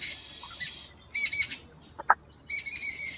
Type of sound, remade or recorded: recorded